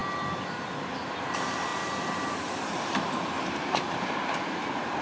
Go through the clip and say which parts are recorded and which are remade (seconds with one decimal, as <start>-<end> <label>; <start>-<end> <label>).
0.0-1.2 recorded; 1.2-5.0 remade